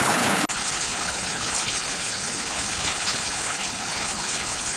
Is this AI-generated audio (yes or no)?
yes